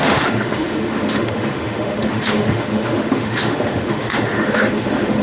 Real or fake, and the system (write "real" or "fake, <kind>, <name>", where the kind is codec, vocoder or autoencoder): fake, autoencoder, DAC-VAE